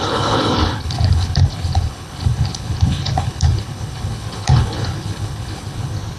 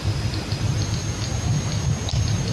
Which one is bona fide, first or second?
second